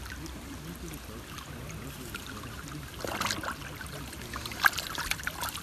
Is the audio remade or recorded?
recorded